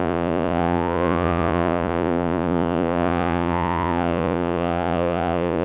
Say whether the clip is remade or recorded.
remade